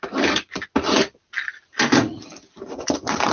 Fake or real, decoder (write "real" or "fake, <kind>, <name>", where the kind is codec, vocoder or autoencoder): real